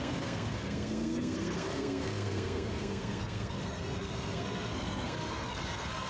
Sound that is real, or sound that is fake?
fake